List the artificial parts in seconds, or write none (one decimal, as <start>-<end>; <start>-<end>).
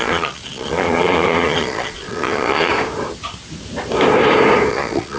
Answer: 0.0-2.7; 4.7-5.2